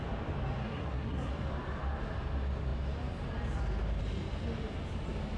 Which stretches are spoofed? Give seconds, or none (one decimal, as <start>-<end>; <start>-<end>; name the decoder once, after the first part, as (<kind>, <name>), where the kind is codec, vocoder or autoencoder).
0.6-1.3 (codec, SNAC)